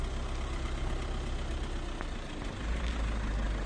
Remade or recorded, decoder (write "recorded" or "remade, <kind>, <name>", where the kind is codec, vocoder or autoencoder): recorded